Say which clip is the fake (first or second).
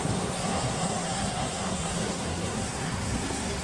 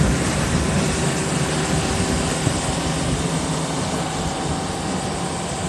first